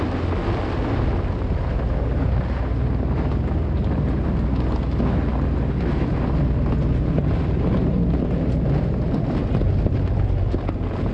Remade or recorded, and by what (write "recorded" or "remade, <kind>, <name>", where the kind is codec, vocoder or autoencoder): recorded